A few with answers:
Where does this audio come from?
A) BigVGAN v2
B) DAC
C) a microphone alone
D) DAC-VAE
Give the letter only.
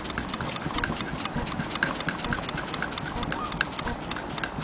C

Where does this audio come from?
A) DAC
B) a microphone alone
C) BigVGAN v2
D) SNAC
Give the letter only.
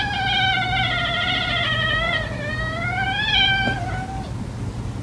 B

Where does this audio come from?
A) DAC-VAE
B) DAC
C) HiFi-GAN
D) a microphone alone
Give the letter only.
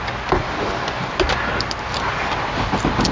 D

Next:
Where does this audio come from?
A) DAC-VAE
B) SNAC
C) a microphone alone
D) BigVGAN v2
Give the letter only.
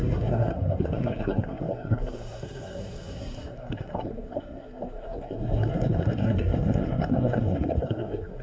B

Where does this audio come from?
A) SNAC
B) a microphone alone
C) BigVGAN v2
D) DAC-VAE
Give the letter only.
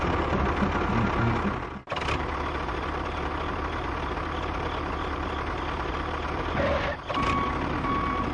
B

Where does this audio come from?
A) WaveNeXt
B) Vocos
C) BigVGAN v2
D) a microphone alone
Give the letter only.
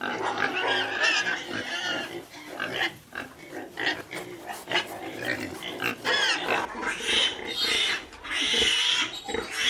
D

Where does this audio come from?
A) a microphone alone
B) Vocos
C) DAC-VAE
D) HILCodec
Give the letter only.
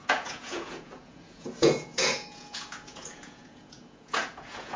B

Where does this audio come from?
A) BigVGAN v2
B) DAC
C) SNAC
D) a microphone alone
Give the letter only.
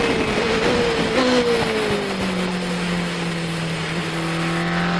D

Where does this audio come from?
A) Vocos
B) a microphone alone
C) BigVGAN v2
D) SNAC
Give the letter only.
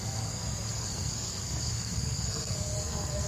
D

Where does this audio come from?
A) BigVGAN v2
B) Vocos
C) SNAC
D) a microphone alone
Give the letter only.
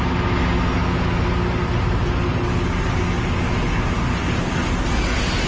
D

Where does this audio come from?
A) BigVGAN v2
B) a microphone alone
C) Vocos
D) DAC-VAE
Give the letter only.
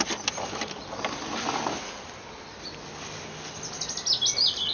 B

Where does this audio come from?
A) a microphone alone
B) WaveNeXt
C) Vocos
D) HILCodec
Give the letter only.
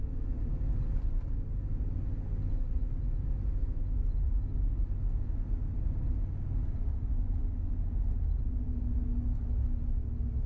A